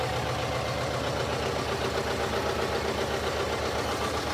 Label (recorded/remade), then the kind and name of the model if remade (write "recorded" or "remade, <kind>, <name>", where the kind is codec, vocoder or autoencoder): recorded